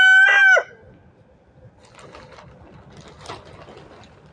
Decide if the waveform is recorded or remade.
recorded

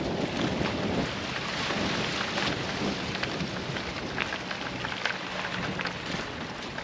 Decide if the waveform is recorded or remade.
recorded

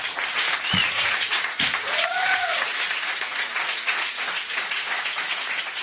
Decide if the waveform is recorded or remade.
remade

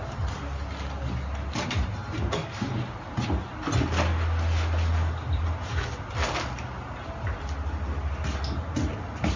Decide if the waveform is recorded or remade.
recorded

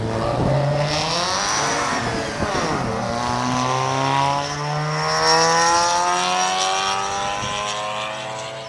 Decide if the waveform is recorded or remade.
recorded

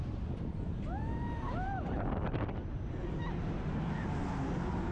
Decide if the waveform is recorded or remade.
recorded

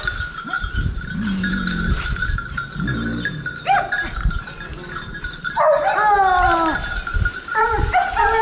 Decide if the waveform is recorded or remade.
recorded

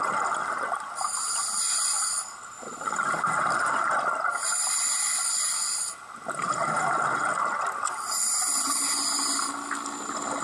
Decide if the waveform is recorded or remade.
recorded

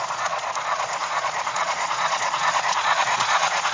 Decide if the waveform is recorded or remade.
remade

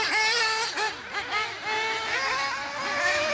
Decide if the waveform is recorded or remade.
recorded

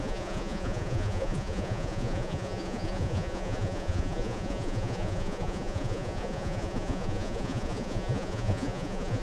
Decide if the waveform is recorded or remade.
remade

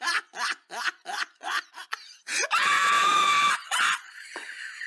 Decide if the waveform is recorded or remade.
remade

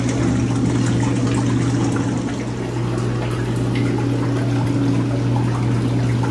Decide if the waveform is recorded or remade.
recorded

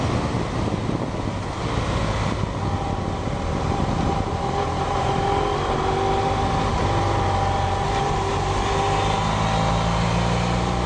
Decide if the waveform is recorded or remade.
recorded